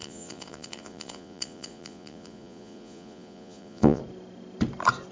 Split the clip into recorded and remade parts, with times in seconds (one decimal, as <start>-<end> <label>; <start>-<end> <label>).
0.0-4.0 remade; 4.0-5.1 recorded